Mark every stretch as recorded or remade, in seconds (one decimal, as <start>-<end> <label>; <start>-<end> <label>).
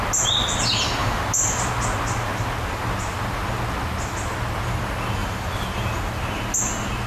0.0-1.0 recorded; 1.0-1.7 remade; 1.7-5.2 recorded; 5.2-6.1 remade; 6.1-7.1 recorded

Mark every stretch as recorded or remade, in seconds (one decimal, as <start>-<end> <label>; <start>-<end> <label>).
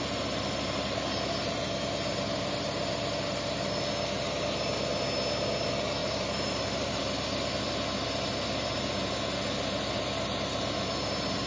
0.0-6.0 recorded; 6.0-7.0 remade; 7.0-11.5 recorded